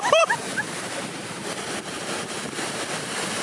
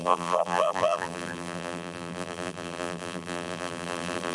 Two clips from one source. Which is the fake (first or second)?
second